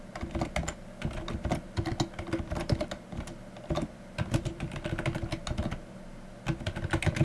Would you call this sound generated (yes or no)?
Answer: no